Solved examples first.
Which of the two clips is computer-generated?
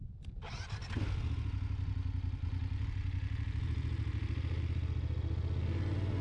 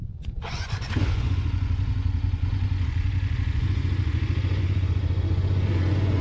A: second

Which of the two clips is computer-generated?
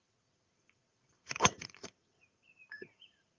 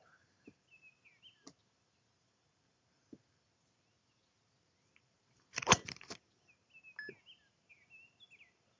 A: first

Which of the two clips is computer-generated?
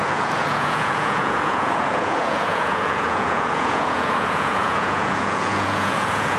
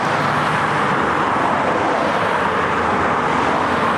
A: first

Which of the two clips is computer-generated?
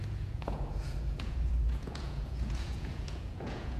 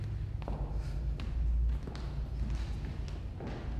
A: first